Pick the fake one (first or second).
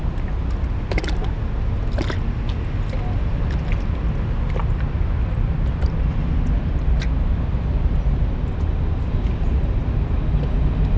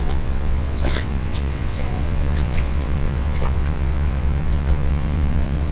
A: second